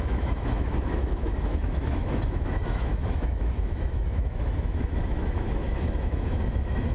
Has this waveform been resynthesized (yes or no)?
yes